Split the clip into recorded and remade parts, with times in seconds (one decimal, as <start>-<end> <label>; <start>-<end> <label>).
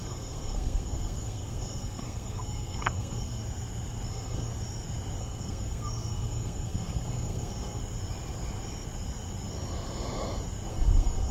0.0-3.4 remade; 3.4-4.1 recorded; 4.1-4.5 remade; 4.5-5.2 recorded; 5.2-7.8 remade; 7.8-10.7 recorded; 10.7-11.3 remade